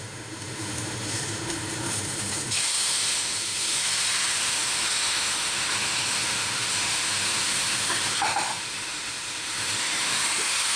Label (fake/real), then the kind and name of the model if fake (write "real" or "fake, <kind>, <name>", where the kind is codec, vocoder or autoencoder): fake, autoencoder, DAC-VAE